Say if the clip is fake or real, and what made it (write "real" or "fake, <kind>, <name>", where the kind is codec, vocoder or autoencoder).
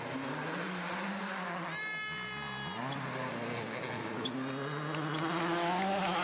real